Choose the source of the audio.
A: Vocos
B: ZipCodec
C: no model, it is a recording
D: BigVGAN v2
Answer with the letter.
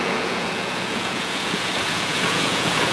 A